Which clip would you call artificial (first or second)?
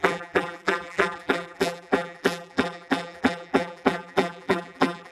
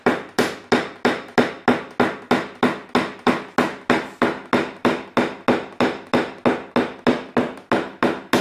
first